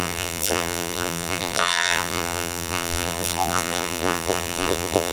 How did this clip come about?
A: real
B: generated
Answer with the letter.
B